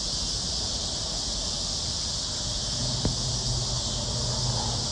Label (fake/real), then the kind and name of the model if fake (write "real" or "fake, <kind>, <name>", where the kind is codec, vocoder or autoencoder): real